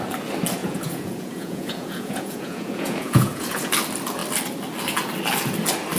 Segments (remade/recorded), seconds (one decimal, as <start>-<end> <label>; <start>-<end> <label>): 0.0-0.6 recorded; 0.6-3.7 remade; 3.7-6.0 recorded

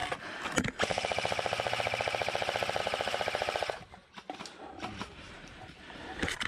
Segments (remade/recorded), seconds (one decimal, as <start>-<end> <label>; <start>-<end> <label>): 0.0-2.8 recorded; 2.8-6.5 remade

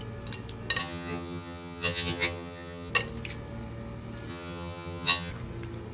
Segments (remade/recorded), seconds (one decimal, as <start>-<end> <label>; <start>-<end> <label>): 0.0-0.8 recorded; 0.8-2.9 remade; 2.9-4.3 recorded; 4.3-5.3 remade; 5.3-5.9 recorded

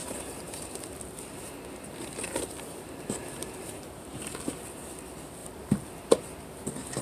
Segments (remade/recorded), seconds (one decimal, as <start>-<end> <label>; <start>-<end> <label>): 0.0-0.8 remade; 0.8-3.4 recorded; 3.4-4.3 remade; 4.3-7.0 recorded

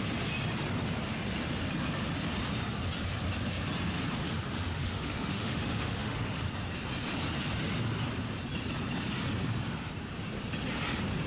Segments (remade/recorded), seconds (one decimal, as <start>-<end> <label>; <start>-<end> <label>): 0.0-4.8 recorded; 4.8-6.4 remade; 6.4-11.3 recorded

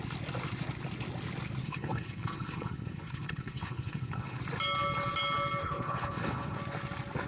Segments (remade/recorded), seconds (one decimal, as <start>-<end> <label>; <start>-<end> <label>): 0.0-1.6 recorded; 1.6-4.4 remade; 4.4-5.6 recorded; 5.6-6.6 remade; 6.6-7.3 recorded

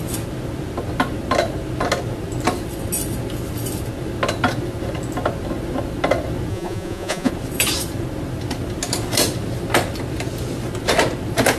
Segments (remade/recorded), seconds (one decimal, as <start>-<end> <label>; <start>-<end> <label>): 0.0-6.5 recorded; 6.5-7.3 remade; 7.3-11.6 recorded

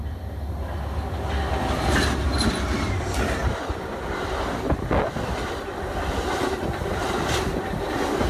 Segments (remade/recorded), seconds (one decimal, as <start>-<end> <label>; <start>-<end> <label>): 0.0-8.3 recorded